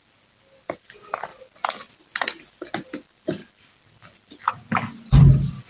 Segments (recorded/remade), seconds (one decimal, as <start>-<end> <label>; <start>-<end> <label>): 0.0-5.7 recorded